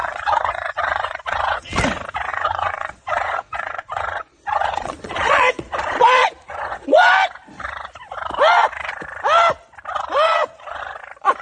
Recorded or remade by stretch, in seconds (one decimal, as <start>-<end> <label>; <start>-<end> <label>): 0.0-1.8 remade; 1.8-2.3 recorded; 2.3-7.1 remade; 7.1-10.3 recorded; 10.3-10.8 remade; 10.8-11.4 recorded